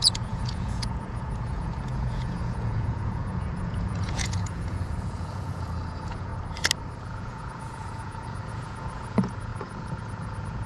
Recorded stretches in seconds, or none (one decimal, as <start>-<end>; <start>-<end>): 6.3-7.0